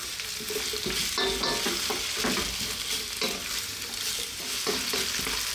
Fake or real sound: real